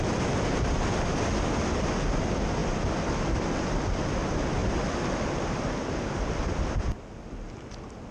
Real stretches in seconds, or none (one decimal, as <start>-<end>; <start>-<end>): 0.0-2.6; 3.8-8.1